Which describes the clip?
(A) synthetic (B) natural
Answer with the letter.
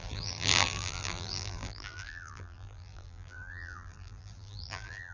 A